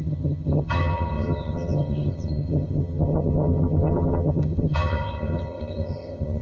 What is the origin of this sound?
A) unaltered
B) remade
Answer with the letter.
B